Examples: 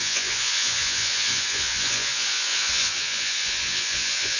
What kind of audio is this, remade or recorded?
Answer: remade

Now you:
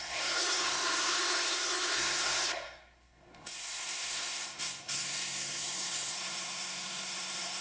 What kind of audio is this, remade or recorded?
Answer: remade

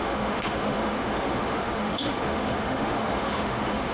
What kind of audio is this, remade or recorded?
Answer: remade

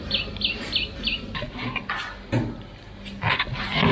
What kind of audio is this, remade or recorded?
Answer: recorded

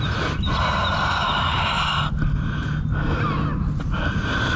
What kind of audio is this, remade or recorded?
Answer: recorded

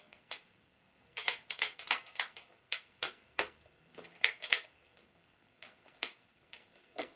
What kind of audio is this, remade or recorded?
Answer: remade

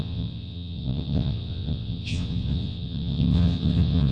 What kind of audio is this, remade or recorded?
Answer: remade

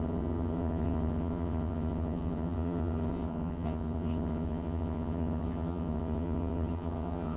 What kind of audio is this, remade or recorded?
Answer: remade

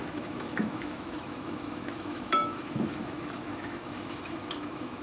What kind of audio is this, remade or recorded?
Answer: remade